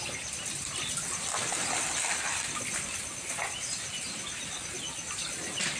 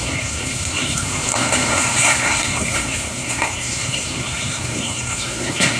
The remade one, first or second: second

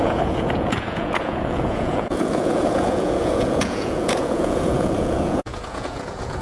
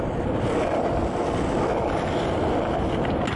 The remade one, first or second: first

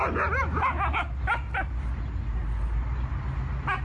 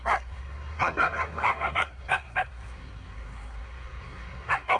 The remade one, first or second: second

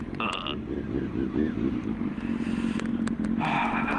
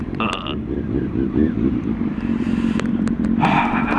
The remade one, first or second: second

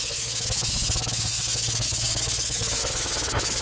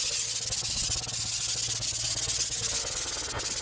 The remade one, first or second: first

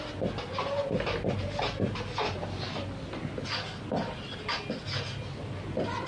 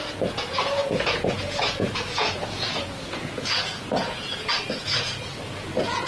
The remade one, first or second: second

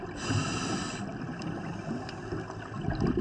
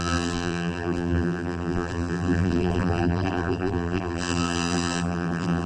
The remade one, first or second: second